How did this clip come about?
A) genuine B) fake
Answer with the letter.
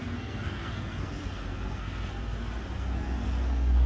B